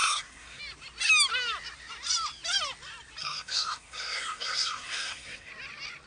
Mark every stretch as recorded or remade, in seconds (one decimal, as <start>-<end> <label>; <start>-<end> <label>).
0.0-0.6 remade; 0.6-3.2 recorded; 3.2-5.5 remade; 5.5-6.1 recorded

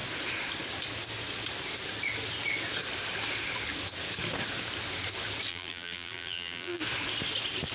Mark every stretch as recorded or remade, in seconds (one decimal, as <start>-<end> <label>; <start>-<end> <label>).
0.0-5.5 recorded; 5.5-6.8 remade; 6.8-7.7 recorded